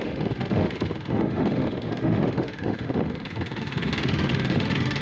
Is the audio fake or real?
fake